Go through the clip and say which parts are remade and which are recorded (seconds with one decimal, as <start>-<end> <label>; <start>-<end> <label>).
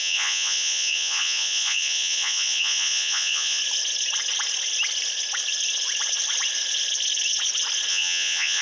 0.0-3.6 remade; 3.6-7.9 recorded; 7.9-8.6 remade